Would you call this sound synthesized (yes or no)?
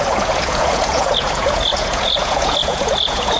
yes